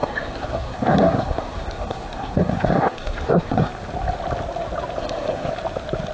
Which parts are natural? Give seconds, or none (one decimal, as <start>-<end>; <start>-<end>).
3.7-5.0; 5.5-6.1